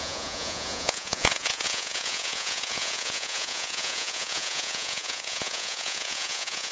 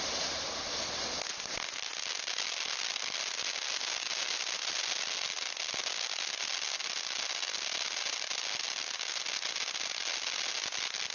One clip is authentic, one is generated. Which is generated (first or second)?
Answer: first